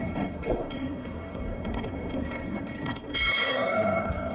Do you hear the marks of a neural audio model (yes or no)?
yes